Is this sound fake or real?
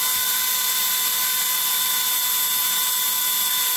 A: real